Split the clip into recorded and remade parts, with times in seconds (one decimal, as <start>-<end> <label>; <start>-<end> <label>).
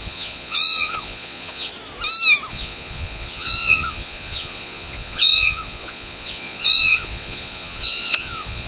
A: 0.0-1.7 remade; 1.7-2.5 recorded; 2.5-8.7 remade